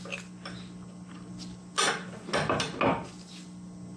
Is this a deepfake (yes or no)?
no